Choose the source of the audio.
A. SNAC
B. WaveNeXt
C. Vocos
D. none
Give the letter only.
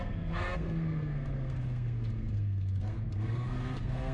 A